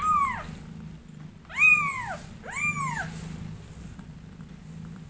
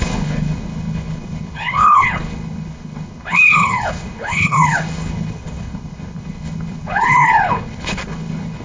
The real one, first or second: first